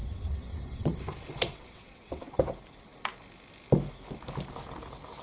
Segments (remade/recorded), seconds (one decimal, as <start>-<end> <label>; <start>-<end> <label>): 0.0-1.0 remade; 1.0-1.5 recorded; 1.5-2.2 remade; 2.2-5.2 recorded